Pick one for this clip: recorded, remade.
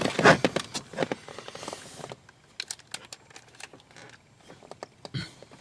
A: recorded